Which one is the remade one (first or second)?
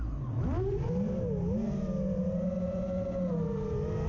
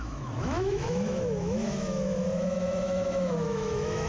second